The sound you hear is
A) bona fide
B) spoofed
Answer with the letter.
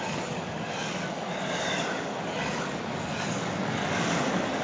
B